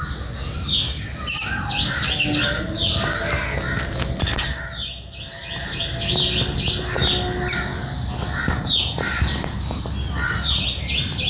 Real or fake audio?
real